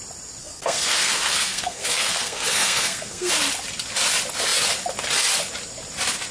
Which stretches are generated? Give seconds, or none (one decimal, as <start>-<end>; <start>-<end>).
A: 0.4-3.3